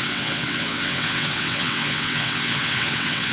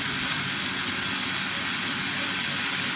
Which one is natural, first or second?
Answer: second